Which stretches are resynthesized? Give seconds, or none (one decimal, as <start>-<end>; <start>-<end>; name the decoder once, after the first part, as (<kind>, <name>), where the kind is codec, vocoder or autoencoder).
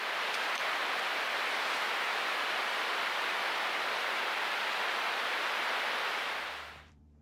0.0-0.8 (vocoder, BigVGAN v2); 2.7-7.2